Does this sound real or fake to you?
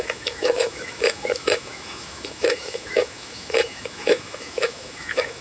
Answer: fake